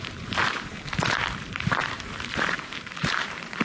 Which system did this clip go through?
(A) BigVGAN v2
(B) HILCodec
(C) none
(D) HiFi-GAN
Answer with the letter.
A